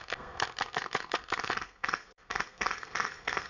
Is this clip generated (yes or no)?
yes